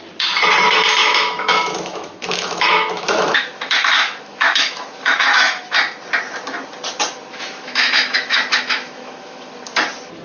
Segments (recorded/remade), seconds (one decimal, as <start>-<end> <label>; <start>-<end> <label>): 0.0-1.0 recorded; 1.0-5.7 remade; 5.7-7.3 recorded; 7.3-9.5 remade; 9.5-10.2 recorded